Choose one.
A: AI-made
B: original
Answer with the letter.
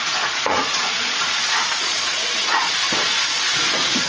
A